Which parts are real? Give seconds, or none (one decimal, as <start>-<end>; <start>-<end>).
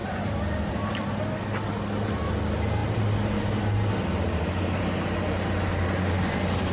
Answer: 0.0-6.7